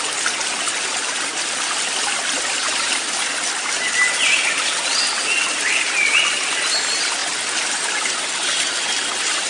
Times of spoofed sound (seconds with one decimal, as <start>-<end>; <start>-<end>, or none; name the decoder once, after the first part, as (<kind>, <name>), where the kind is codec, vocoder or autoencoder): none